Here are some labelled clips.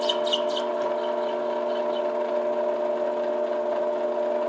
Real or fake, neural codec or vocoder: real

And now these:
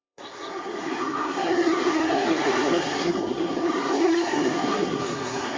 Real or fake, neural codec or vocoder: fake, codec, SNAC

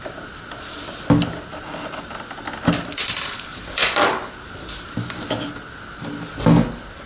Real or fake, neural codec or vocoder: real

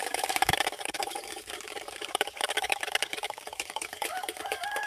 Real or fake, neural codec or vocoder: fake, codec, DAC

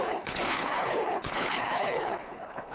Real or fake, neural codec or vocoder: fake, codec, HILCodec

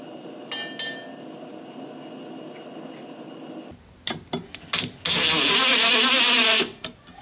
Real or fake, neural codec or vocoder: real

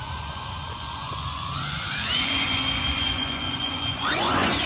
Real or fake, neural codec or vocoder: fake, vocoder, Vocos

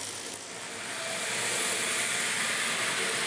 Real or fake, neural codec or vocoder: real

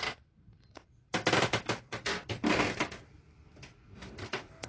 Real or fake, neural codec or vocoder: fake, vocoder, BigVGAN v2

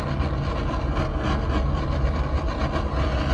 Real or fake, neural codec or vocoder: real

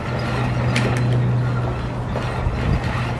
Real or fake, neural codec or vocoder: real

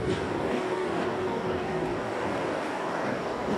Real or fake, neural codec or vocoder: fake, codec, DAC